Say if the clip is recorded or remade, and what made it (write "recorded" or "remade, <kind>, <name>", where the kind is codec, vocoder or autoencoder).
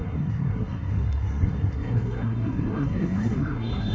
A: remade, codec, SNAC